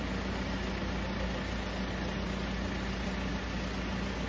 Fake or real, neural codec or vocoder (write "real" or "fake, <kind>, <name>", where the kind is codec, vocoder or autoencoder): real